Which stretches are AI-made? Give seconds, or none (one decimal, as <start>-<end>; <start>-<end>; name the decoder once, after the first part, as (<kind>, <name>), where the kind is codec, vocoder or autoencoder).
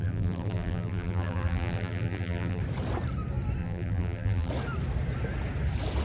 0.0-2.6 (vocoder, BigVGAN v2); 3.6-4.5